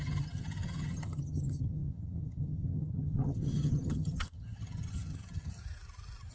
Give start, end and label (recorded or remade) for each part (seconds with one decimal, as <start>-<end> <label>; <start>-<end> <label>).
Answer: 0.0-5.6 remade; 5.6-6.3 recorded